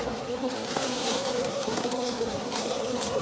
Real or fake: fake